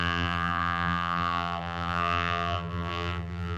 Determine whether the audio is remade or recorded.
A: remade